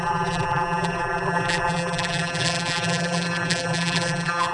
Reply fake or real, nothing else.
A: fake